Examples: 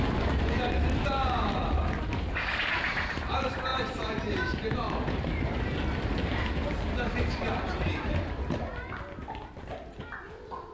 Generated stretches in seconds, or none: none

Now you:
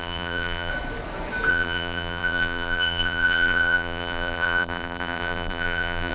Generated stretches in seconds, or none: 0.0-0.7 (vocoder, BigVGAN v2); 1.5-6.1

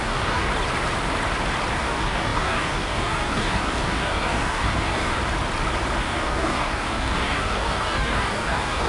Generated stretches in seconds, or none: 0.0-0.5 (codec, DAC); 1.7-5.2; 6.0-8.9

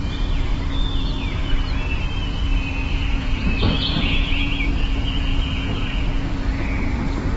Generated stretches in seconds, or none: 0.0-0.5 (vocoder, Vocos); 2.9-7.4

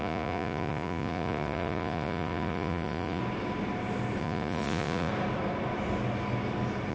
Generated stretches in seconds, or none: 0.0-3.2 (vocoder, Vocos); 4.2-5.1

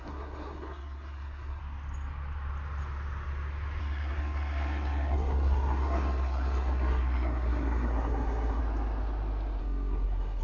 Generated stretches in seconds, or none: 0.0-1.6 (codec, SNAC); 3.8-8.6; 9.6-10.4

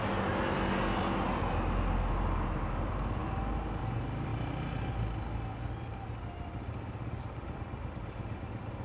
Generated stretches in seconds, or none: none

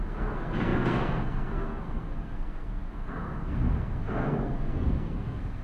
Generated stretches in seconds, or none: 0.0-5.6 (codec, SNAC)